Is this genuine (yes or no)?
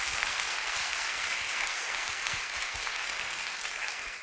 no